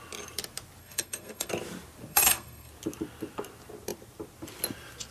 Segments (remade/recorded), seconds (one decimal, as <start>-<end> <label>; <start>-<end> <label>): 0.0-0.8 recorded; 0.8-1.5 remade; 1.5-2.1 recorded; 2.1-2.7 remade; 2.7-5.1 recorded